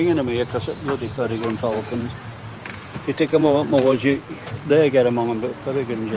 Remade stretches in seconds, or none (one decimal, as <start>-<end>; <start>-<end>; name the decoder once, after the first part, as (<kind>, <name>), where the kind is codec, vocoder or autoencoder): 1.0-4.7 (vocoder, Vocos)